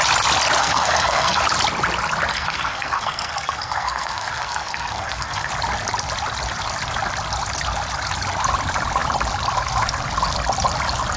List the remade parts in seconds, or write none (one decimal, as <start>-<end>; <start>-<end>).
0.6-1.4; 2.3-5.5